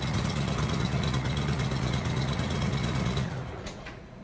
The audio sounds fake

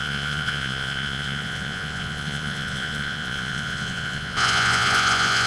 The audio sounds fake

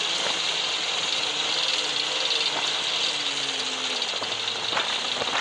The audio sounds real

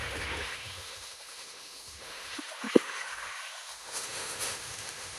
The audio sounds fake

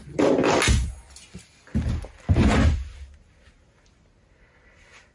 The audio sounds real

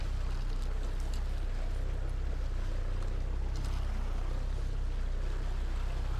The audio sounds real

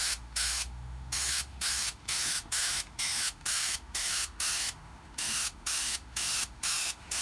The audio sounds fake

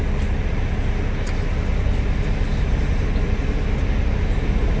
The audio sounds real